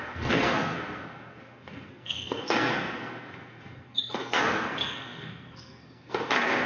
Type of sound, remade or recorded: remade